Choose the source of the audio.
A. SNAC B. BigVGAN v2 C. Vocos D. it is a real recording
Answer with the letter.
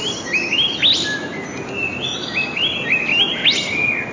D